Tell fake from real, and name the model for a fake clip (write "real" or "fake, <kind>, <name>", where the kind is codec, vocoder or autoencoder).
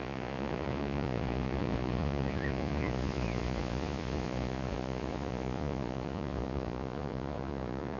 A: fake, vocoder, Vocos